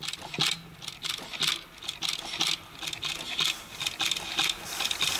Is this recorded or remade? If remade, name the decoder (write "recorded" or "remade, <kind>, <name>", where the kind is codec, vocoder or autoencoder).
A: recorded